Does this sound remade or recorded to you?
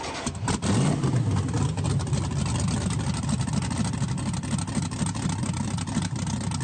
recorded